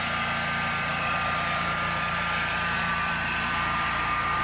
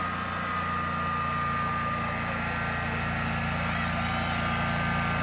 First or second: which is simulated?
first